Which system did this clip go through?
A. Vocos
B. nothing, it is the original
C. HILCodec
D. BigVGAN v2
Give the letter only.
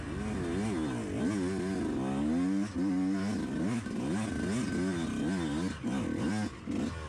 B